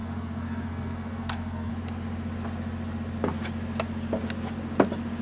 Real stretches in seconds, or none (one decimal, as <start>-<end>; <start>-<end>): 1.7-5.2